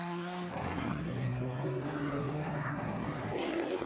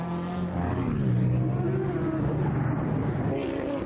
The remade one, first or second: first